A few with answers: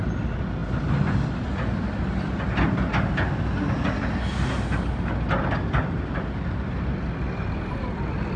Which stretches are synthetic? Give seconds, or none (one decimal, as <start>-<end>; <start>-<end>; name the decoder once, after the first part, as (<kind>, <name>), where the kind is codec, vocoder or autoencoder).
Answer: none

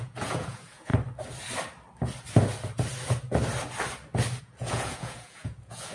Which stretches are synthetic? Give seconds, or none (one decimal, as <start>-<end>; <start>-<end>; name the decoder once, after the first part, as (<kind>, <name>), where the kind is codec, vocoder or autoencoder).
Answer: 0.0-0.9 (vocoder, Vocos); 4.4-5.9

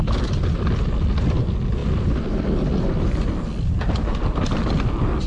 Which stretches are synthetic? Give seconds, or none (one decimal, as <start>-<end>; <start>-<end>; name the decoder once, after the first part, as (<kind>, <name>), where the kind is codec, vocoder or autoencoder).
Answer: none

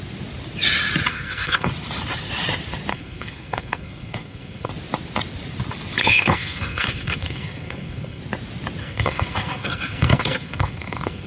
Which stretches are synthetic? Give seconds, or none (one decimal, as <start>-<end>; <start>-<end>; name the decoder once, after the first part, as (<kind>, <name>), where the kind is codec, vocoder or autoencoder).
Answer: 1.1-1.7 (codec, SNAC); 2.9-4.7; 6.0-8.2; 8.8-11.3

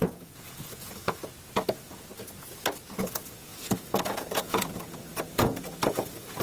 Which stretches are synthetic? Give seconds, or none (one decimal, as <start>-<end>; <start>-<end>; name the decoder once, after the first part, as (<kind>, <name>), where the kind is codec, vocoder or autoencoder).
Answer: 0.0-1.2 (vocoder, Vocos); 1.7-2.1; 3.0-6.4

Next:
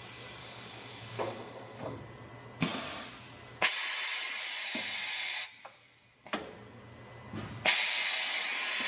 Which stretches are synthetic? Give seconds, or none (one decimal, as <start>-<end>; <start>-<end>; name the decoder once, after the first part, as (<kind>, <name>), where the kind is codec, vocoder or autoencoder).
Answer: 0.4-2.0 (codec, DAC)

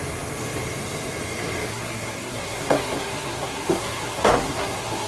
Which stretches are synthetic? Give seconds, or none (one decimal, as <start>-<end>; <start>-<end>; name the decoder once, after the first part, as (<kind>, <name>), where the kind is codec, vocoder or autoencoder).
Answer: 1.7-5.1 (codec, SNAC)